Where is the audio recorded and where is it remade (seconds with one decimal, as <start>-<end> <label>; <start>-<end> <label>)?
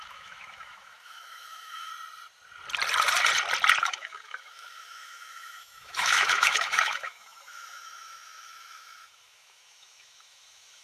0.0-1.9 remade; 1.9-3.8 recorded; 3.8-10.8 remade